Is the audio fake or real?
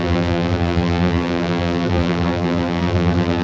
fake